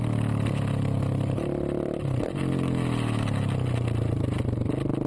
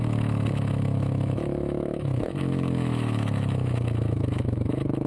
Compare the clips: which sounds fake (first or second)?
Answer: second